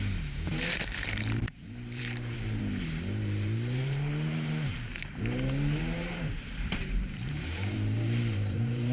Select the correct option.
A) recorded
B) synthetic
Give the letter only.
B